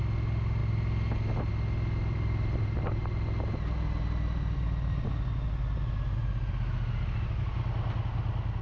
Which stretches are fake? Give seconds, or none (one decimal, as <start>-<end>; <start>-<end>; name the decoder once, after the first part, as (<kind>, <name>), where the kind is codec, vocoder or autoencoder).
none